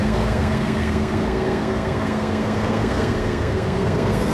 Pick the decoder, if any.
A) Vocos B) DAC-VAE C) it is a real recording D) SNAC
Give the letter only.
D